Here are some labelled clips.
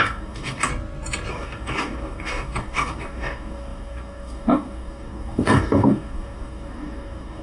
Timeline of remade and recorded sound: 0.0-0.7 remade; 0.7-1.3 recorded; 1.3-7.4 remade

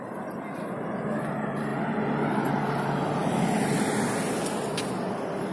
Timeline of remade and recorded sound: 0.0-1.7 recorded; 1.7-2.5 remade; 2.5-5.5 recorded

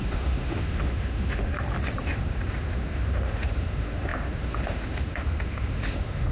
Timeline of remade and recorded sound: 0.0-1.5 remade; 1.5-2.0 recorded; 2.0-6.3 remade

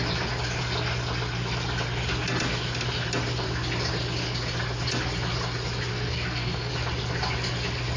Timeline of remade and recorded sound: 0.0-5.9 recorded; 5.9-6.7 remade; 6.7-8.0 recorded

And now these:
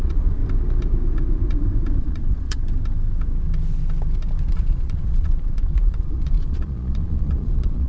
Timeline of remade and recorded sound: 0.0-0.4 remade; 0.4-2.0 recorded; 2.0-2.6 remade; 2.6-4.5 recorded; 4.5-7.9 remade

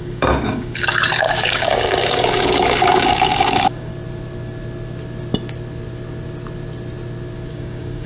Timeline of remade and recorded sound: 0.0-3.9 remade; 3.9-7.5 recorded; 7.5-8.1 remade